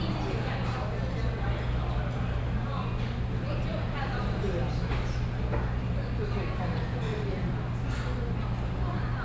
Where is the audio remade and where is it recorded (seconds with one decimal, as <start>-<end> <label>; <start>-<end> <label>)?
0.0-3.7 recorded; 3.7-4.4 remade; 4.4-6.2 recorded; 6.2-7.5 remade; 7.5-9.2 recorded